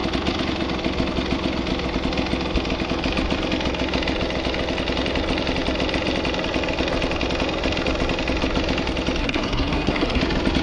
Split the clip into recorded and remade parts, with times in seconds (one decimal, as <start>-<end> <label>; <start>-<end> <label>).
0.0-9.2 recorded; 9.2-10.2 remade; 10.2-10.6 recorded